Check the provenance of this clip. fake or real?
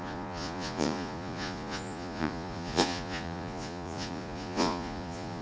fake